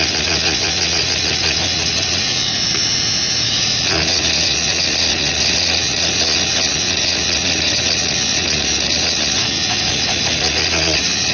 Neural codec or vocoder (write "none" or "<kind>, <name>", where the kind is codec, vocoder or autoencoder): vocoder, Vocos